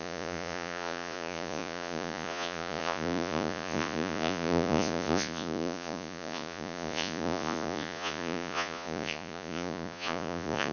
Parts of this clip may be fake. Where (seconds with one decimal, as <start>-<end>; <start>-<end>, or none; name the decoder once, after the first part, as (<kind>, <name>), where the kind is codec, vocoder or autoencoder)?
0.0-10.7 (vocoder, Vocos)